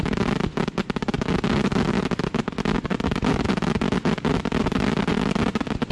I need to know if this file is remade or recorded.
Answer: recorded